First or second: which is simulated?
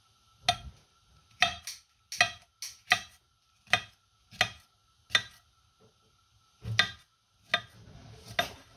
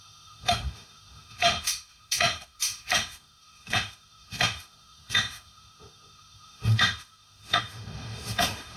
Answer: second